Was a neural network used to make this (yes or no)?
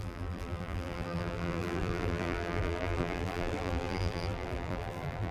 yes